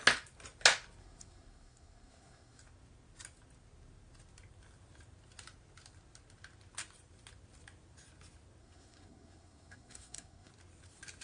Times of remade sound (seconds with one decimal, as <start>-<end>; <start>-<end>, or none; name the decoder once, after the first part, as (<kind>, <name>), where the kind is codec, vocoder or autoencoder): 1.0-2.6 (codec, SNAC); 8.6-10.5